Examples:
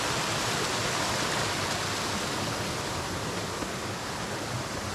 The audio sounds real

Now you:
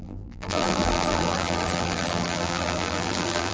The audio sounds fake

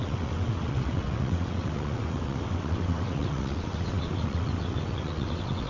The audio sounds fake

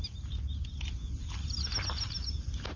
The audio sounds real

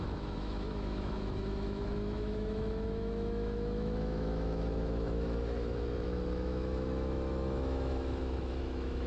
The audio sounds fake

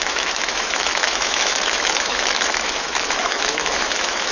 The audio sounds fake